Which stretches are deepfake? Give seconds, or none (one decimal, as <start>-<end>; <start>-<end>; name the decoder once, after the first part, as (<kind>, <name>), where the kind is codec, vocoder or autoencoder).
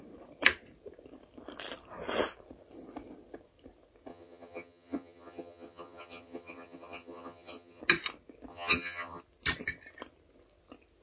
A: 4.1-7.8 (vocoder, HiFi-GAN); 8.5-9.2